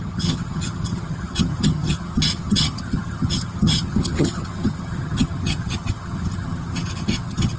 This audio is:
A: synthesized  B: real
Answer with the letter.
A